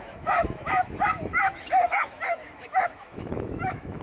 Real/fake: fake